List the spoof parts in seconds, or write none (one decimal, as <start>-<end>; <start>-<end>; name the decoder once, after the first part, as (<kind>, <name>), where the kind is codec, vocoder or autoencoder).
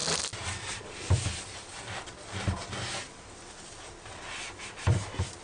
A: none